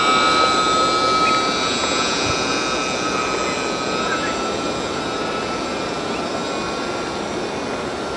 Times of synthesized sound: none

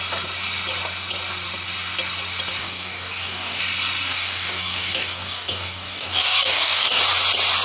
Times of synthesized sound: 2.6-3.6 (codec, DAC); 4.1-7.0

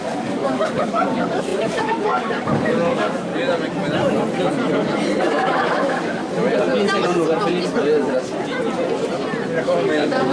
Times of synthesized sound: 0.0-3.3 (codec, DAC); 5.2-6.2; 9.6-10.3

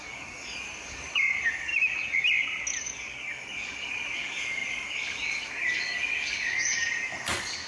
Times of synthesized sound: 0.0-1.7 (codec, DAC); 2.8-7.7

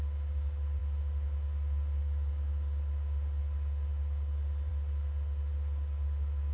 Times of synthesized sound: none

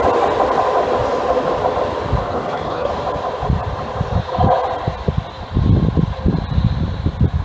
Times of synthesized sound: 2.2-2.9 (codec, DAC)